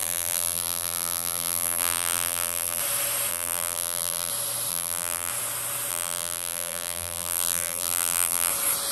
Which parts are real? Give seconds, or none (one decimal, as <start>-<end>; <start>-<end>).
2.8-3.3; 4.3-4.7; 5.3-5.9; 8.5-8.9